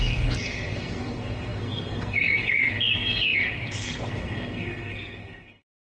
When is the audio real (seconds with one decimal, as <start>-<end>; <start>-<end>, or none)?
none